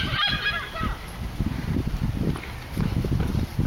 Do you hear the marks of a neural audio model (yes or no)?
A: no